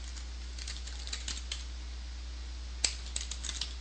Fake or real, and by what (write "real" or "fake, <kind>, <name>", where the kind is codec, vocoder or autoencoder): real